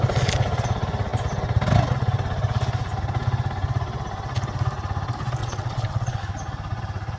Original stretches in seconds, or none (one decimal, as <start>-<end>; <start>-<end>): 0.0-5.4; 6.2-7.2